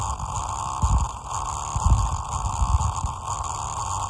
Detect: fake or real real